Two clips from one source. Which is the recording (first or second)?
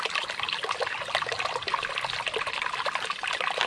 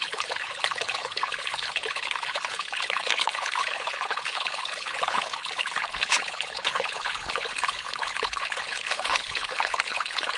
first